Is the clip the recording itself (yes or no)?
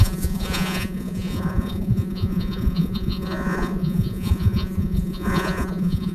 no